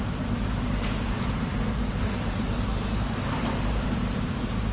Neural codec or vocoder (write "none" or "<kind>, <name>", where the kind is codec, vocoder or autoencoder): vocoder, BigVGAN v2